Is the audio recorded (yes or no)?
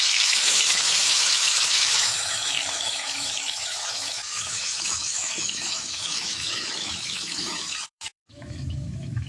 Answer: no